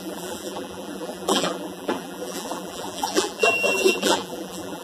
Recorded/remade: remade